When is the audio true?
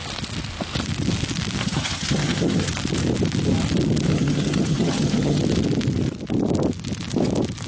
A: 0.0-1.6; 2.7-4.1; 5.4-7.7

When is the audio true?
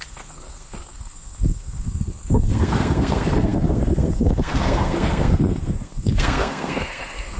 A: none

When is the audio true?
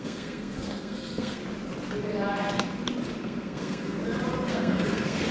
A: 1.4-3.2; 4.0-4.5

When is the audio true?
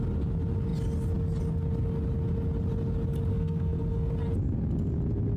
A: 0.0-3.3; 4.1-5.4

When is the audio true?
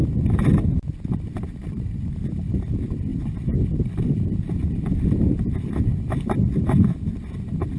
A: 3.1-4.0